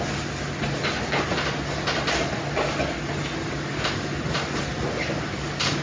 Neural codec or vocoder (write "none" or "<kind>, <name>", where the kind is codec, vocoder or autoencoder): none